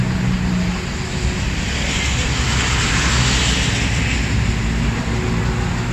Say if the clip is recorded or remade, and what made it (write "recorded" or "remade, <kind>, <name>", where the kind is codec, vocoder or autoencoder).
recorded